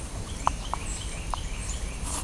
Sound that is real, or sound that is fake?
fake